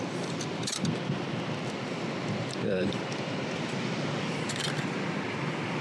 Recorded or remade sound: remade